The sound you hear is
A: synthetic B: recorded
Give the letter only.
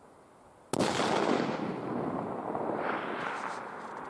B